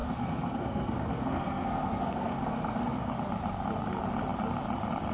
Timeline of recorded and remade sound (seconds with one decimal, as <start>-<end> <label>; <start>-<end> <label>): 0.0-3.1 remade; 3.1-5.1 recorded